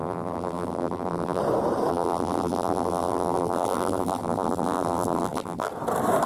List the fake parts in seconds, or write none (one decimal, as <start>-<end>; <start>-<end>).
0.0-1.4; 1.9-5.7